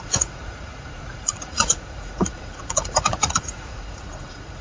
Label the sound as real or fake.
fake